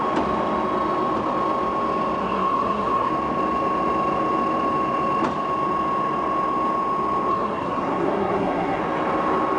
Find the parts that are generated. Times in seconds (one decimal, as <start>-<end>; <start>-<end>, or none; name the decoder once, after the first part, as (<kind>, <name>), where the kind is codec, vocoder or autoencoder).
2.2-3.1 (codec, SNAC); 7.3-8.8